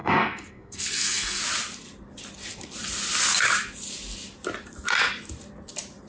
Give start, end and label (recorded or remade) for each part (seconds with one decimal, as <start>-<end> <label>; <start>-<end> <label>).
0.0-1.4 remade; 1.4-6.1 recorded